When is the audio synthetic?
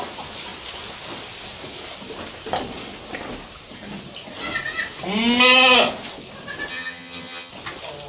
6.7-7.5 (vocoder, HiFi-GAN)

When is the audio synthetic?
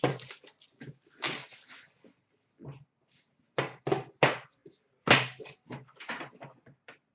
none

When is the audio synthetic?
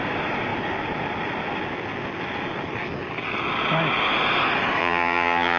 4.8-5.6 (vocoder, BigVGAN v2)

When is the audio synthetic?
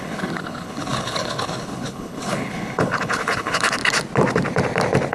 0.0-3.8 (codec, HILCodec)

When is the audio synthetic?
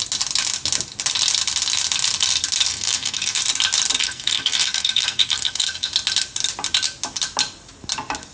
2.7-3.4 (codec, SNAC); 4.0-5.9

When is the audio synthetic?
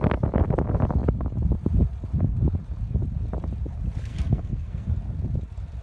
4.0-4.9 (codec, SNAC)